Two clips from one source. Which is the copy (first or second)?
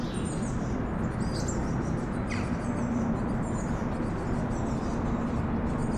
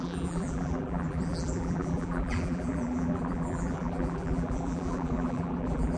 second